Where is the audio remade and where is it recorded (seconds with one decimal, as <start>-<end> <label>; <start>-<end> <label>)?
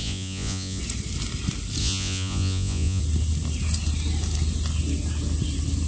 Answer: 0.0-0.8 remade; 0.8-1.8 recorded; 1.8-3.0 remade; 3.0-5.9 recorded